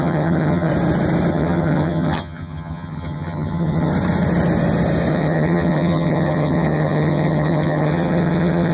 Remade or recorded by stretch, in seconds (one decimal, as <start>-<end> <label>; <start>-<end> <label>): 0.0-0.7 remade; 0.7-1.3 recorded; 1.3-3.9 remade; 3.9-5.1 recorded; 5.1-8.7 remade